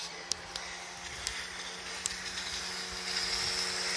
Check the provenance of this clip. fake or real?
real